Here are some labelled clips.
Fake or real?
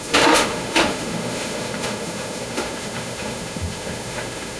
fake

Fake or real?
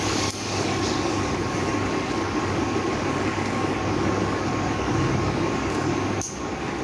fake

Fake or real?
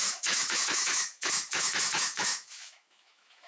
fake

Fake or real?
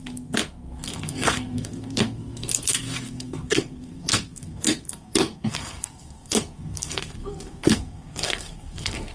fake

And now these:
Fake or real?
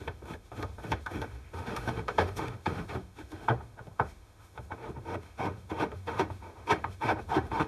fake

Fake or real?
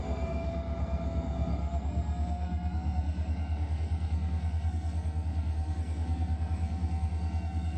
fake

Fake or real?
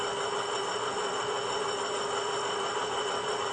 real